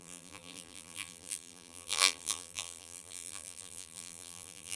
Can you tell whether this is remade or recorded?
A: remade